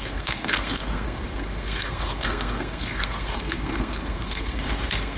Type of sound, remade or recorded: remade